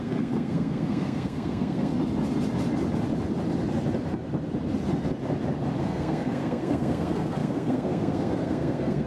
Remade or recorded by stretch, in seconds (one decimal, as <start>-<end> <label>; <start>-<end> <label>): 0.0-1.9 remade; 1.9-5.8 recorded; 5.8-9.1 remade